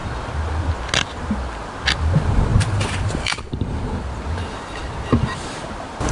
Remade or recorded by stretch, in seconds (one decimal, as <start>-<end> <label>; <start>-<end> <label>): 0.0-2.5 recorded; 2.5-3.6 remade; 3.6-6.1 recorded